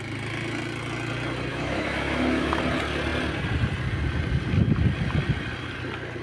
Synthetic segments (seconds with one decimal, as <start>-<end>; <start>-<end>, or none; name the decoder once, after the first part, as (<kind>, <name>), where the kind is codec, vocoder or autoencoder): 1.5-2.6 (autoencoder, DAC-VAE)

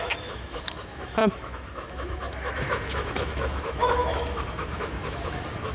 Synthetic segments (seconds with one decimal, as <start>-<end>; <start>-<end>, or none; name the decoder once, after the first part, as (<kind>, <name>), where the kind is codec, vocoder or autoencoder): 0.0-5.7 (autoencoder, DAC-VAE)

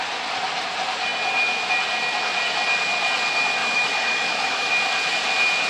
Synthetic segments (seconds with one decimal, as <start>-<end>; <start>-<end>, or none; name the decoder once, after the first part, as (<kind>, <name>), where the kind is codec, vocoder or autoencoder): 3.6-4.7 (autoencoder, DAC-VAE)